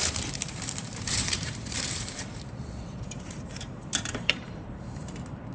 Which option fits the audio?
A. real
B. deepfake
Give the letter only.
B